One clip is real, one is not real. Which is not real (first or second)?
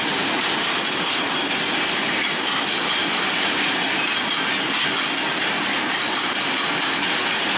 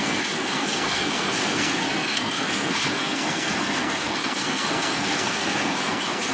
second